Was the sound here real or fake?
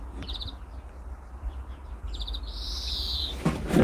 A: real